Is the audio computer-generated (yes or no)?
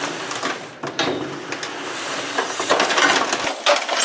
no